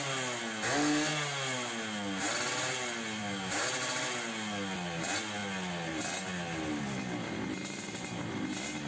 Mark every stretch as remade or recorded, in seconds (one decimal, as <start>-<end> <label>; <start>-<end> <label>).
0.0-3.2 recorded; 3.2-3.7 remade; 3.7-8.9 recorded